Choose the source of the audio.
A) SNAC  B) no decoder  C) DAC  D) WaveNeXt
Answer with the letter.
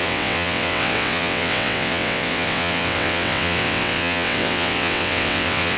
D